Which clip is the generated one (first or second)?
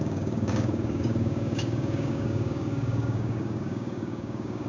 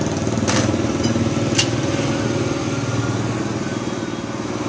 first